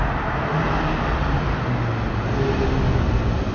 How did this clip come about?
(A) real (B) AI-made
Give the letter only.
A